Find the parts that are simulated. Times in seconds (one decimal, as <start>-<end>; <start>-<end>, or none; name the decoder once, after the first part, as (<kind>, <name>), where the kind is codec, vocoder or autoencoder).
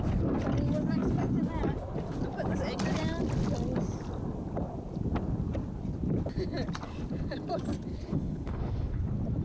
7.9-9.0 (codec, HILCodec)